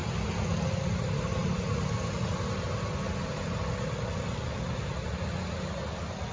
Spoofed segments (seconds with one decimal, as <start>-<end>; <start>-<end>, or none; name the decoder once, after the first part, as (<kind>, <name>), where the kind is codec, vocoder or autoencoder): none